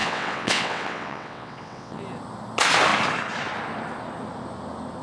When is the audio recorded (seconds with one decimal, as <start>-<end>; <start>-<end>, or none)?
2.0-5.0